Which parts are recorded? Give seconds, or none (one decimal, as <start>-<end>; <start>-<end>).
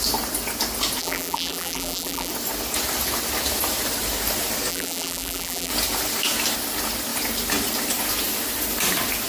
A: 0.0-1.0; 2.3-4.7; 5.7-9.3